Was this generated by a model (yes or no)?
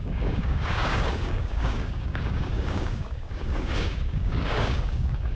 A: yes